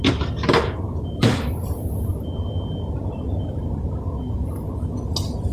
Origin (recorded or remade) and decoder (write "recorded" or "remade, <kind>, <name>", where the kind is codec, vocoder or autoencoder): recorded